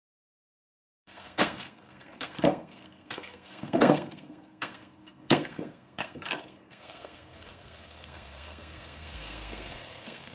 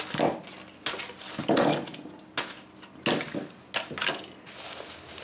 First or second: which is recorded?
second